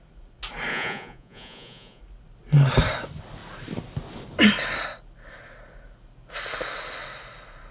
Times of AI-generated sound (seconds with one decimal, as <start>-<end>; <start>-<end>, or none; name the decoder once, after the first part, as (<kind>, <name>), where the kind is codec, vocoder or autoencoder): 0.7-2.0 (vocoder, Vocos)